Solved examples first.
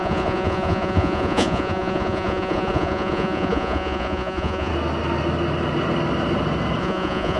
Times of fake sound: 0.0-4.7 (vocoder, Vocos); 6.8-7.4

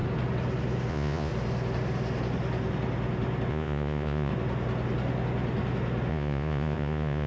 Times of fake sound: 0.9-1.3 (vocoder, Vocos); 3.5-4.3; 6.1-7.3

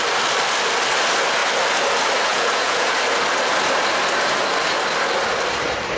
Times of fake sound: 2.3-2.9 (vocoder, Vocos)